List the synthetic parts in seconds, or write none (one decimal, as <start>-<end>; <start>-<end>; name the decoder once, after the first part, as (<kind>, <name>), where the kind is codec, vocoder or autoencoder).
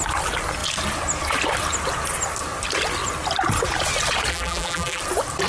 4.3-5.0 (vocoder, BigVGAN v2)